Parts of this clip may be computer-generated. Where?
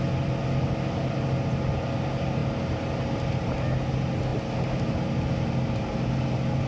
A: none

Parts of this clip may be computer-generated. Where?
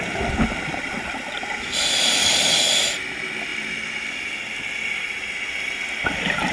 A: 2.2-2.7 (codec, DAC)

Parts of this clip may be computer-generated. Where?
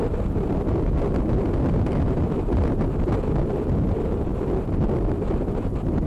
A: none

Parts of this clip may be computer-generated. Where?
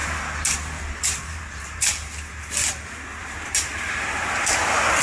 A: 0.0-1.9 (vocoder, BigVGAN v2); 3.2-4.5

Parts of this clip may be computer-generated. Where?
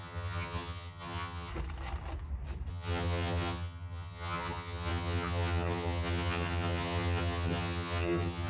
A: 0.0-1.5 (vocoder, HiFi-GAN); 2.7-8.5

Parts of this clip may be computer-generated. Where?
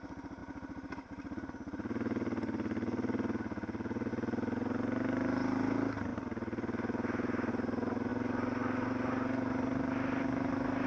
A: none